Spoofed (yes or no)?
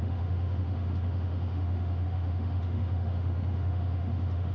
yes